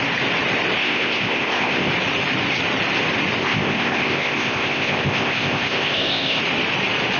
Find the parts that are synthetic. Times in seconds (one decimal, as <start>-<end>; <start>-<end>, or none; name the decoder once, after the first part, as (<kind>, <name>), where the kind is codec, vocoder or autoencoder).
0.8-1.9 (codec, ZipCodec); 3.4-6.4